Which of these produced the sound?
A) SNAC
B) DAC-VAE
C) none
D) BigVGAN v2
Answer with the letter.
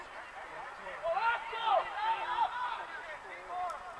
D